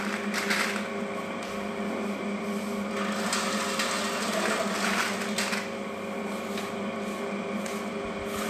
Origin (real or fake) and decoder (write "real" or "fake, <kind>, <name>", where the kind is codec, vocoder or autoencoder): real